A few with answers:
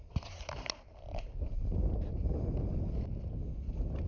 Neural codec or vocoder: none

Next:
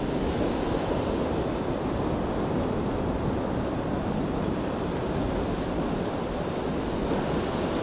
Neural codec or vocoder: none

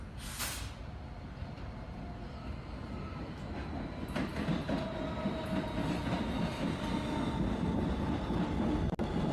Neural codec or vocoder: none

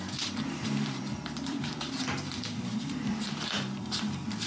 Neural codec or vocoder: vocoder, BigVGAN v2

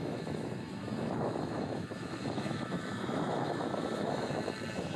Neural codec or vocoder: autoencoder, DAC-VAE